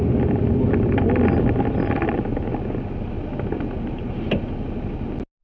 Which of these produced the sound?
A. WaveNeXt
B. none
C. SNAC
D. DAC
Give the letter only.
B